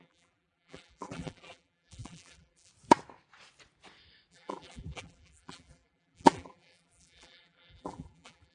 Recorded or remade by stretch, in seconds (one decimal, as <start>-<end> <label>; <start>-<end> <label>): 0.0-2.7 remade; 2.7-4.3 recorded; 4.3-8.5 remade